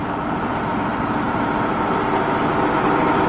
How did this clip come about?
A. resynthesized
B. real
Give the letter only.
B